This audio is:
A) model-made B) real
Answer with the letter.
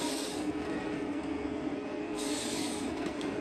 A